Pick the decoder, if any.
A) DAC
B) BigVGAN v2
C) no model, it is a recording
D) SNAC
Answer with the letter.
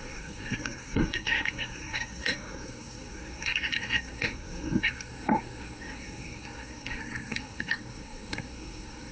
D